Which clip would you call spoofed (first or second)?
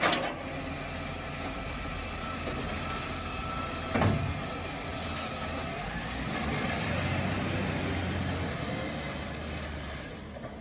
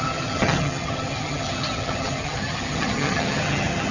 second